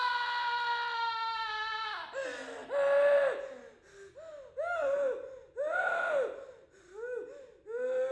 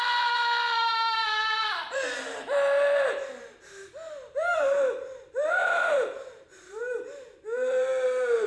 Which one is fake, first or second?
second